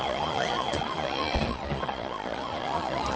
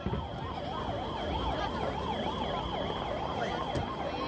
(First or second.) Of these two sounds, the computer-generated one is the first